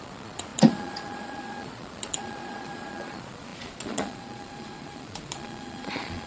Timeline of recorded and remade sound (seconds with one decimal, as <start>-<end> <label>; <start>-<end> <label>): 0.0-6.3 remade